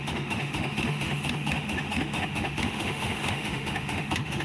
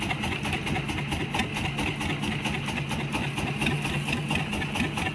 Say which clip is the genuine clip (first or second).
second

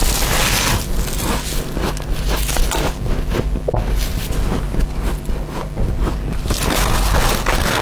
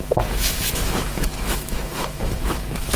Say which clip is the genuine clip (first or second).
first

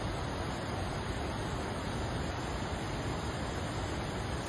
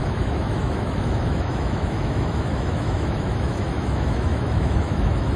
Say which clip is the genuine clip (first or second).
first